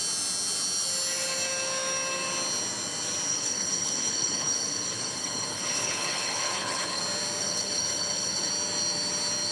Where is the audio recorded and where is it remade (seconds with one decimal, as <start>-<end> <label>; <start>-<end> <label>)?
0.0-3.3 recorded; 3.3-7.0 remade; 7.0-7.4 recorded; 7.4-8.5 remade; 8.5-9.5 recorded